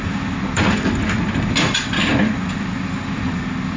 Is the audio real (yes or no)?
yes